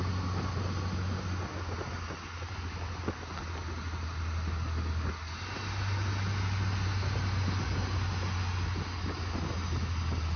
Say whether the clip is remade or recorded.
recorded